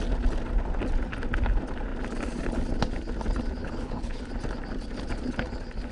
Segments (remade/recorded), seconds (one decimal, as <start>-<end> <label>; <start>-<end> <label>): 0.0-3.6 recorded; 3.6-4.3 remade; 4.3-5.9 recorded